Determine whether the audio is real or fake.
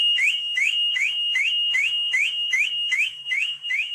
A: fake